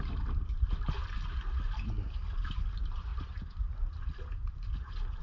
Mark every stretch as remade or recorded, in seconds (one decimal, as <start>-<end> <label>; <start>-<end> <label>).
0.0-5.2 recorded